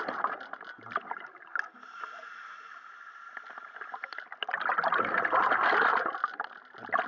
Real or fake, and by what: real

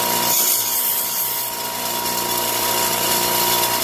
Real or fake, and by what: fake, vocoder, BigVGAN v2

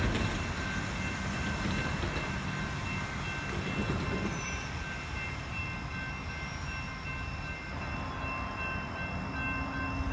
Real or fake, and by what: real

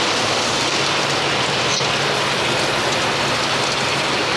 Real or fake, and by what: real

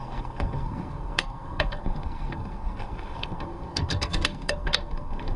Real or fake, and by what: fake, codec, SNAC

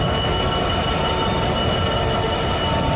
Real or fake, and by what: real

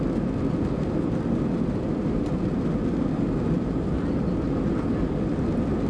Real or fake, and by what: real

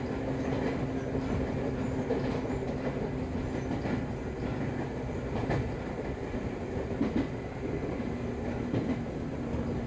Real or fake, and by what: real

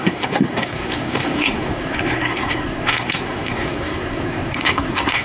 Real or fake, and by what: fake, codec, SNAC